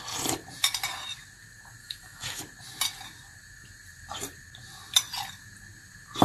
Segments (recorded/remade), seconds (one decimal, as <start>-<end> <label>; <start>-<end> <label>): 0.0-1.8 recorded; 1.8-2.4 remade; 2.4-6.2 recorded